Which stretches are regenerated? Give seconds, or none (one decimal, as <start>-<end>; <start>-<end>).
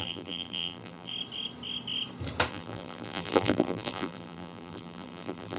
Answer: 0.0-1.1; 2.5-5.6